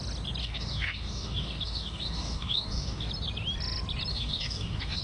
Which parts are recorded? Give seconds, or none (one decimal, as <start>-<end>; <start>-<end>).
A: 0.0-0.4; 3.1-4.1